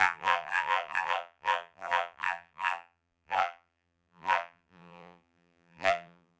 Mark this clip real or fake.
fake